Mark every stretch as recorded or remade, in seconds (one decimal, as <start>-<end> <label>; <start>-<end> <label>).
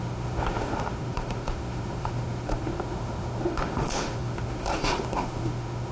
0.0-5.9 remade